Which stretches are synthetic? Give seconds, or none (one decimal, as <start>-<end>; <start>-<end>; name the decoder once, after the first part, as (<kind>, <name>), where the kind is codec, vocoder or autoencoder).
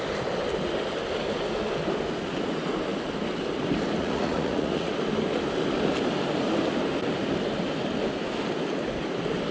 4.0-4.9 (vocoder, Vocos)